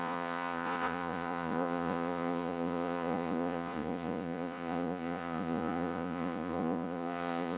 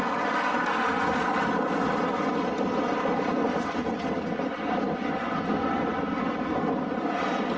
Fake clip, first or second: first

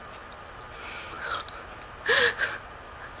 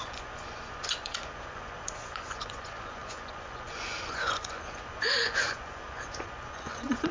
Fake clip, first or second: second